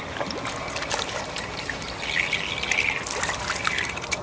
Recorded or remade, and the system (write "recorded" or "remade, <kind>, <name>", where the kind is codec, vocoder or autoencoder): recorded